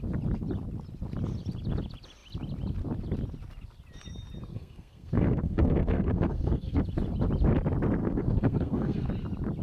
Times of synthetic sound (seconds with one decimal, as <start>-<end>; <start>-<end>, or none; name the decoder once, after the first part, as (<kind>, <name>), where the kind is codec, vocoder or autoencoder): 4.5-6.8 (codec, SNAC); 8.0-9.1